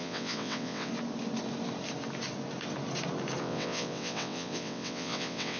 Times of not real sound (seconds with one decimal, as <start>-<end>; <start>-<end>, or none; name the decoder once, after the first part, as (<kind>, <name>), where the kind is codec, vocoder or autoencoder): 0.0-0.9 (vocoder, WaveNeXt); 3.4-5.6